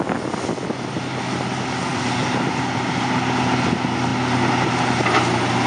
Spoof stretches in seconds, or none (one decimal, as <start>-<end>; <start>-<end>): none